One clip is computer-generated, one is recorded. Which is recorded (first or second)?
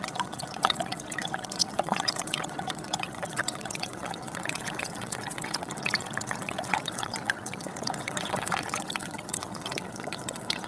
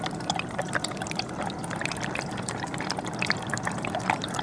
second